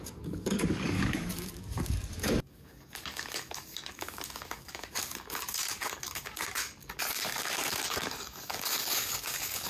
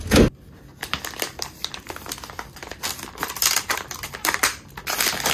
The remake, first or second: first